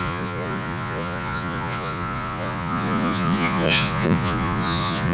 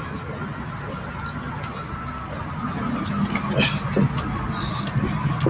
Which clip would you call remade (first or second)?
first